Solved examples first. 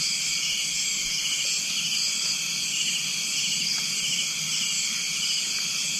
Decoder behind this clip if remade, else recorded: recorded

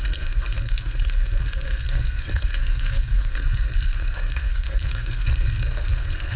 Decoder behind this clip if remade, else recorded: remade, codec, SNAC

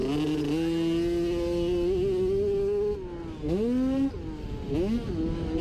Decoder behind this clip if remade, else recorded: recorded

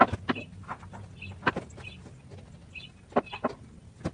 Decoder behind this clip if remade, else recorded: recorded